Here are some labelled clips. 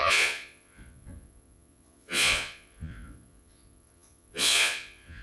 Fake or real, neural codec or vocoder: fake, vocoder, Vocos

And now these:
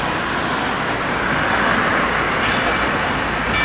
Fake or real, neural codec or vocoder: real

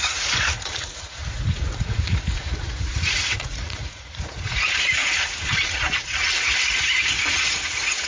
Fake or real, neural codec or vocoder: fake, vocoder, Vocos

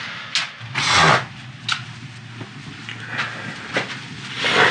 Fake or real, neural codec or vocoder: real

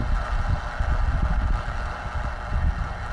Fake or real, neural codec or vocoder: real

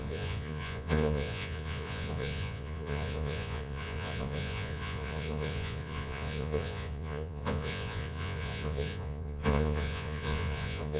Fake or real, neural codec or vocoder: fake, vocoder, Vocos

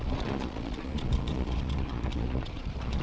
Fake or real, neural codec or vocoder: fake, vocoder, Vocos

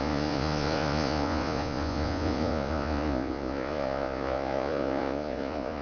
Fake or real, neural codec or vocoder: fake, vocoder, Vocos